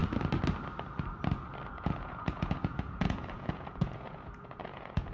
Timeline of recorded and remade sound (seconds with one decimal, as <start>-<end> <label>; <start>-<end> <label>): 0.0-1.7 recorded; 1.7-5.1 remade